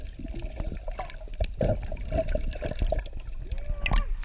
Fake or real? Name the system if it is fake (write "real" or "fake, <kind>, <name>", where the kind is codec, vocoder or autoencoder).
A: real